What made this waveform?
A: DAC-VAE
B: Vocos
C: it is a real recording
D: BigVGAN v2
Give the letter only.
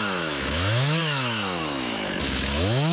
A